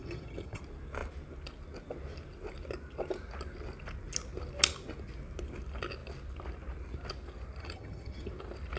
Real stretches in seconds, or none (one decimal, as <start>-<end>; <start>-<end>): 0.6-7.6; 8.3-8.8